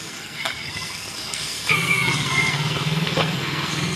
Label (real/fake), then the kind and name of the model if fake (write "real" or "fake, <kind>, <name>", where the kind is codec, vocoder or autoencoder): fake, codec, SNAC